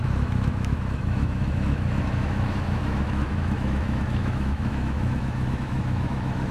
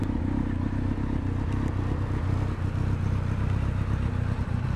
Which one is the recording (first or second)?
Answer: second